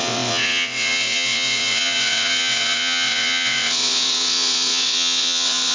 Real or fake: fake